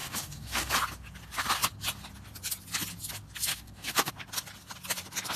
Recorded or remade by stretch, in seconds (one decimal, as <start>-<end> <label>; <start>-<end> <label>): 0.0-0.7 remade; 0.7-3.5 recorded; 3.5-4.1 remade; 4.1-5.4 recorded